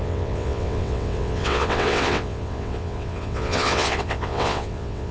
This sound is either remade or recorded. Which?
remade